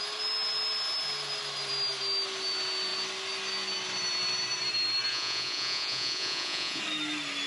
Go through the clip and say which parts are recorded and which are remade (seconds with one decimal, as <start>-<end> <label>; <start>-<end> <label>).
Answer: 0.0-5.1 recorded; 5.1-6.8 remade; 6.8-7.5 recorded